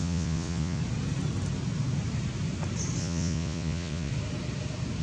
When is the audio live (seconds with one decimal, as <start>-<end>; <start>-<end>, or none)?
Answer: 0.8-3.0; 4.1-5.0